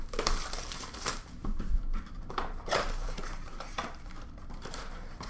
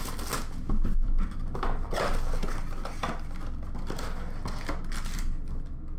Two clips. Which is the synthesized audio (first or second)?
first